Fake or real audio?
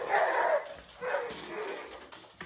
real